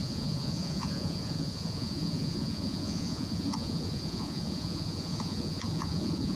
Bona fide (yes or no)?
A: no